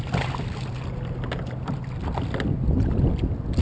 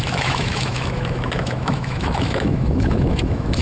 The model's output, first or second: second